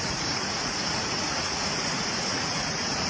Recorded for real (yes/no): no